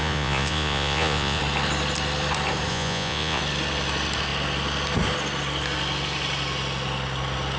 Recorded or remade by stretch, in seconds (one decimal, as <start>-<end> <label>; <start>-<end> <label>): 0.0-1.4 remade; 1.4-2.7 recorded; 2.7-3.4 remade; 3.4-7.6 recorded

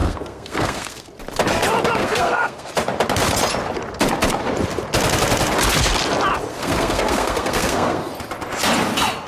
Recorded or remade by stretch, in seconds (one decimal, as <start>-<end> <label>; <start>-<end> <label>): 0.0-1.1 remade; 1.1-2.0 recorded; 2.0-2.7 remade; 2.7-6.5 recorded; 6.5-8.1 remade; 8.1-9.3 recorded

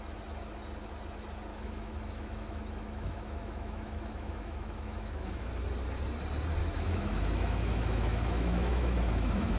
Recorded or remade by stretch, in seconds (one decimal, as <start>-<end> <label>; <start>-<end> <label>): 0.0-1.5 recorded; 1.5-5.5 remade; 5.5-6.6 recorded; 6.6-9.6 remade

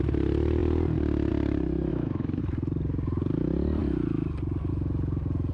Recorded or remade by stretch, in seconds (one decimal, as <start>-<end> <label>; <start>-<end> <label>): 0.0-1.9 recorded; 1.9-2.4 remade; 2.4-5.5 recorded

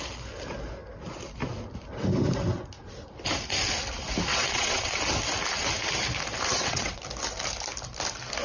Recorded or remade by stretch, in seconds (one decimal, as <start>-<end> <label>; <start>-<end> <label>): 0.0-4.3 recorded; 4.3-4.9 remade; 4.9-6.5 recorded; 6.5-7.0 remade; 7.0-8.4 recorded

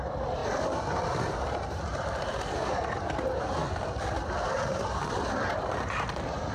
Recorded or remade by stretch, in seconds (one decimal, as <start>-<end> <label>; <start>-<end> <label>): 0.0-6.5 recorded

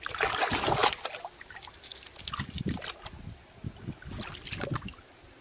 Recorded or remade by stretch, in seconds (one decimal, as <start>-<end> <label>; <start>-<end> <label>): 0.0-5.4 recorded